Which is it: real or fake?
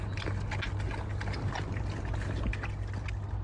real